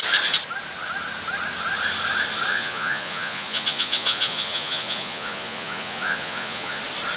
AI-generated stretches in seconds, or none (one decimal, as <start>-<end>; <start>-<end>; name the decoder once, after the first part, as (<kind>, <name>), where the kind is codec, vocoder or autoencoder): 2.5-6.8 (vocoder, Vocos)